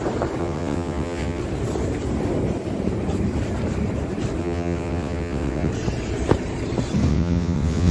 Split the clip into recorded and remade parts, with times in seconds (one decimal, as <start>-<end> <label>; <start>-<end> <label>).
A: 0.0-0.4 recorded; 0.4-1.4 remade; 1.4-4.4 recorded; 4.4-5.7 remade; 5.7-7.1 recorded; 7.1-7.9 remade